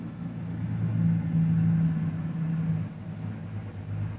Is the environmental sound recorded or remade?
recorded